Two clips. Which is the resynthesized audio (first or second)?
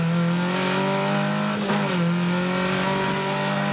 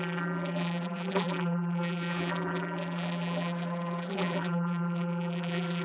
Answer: second